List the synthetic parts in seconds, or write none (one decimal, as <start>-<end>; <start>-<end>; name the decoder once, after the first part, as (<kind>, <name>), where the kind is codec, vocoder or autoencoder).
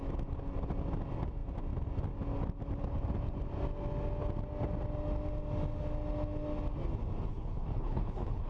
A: 7.3-8.5 (codec, HILCodec)